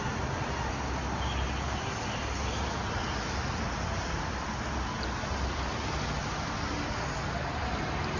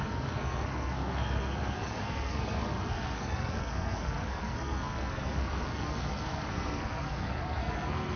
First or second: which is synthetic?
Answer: second